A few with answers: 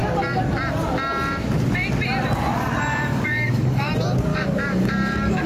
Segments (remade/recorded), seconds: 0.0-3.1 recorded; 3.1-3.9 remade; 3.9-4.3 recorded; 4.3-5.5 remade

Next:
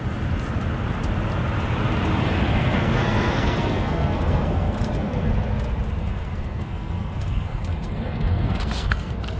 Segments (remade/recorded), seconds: 0.0-2.5 recorded; 2.5-5.3 remade; 5.3-6.0 recorded; 6.0-9.4 remade

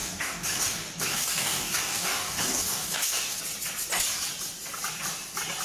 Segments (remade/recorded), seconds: 0.0-3.4 remade; 3.4-5.6 recorded

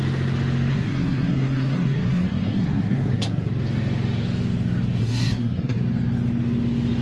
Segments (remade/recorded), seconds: 0.0-0.7 recorded; 0.7-3.5 remade; 3.5-5.0 recorded; 5.0-5.8 remade; 5.8-7.0 recorded

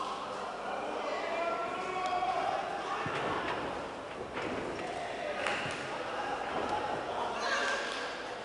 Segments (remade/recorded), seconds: 0.0-8.4 recorded